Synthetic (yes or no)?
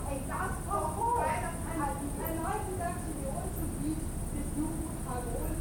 no